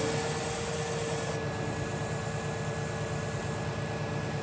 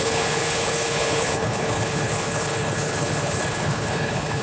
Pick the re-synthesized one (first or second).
second